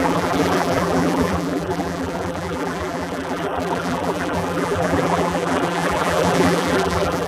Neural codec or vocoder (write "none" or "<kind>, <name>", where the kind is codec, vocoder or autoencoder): vocoder, BigVGAN v2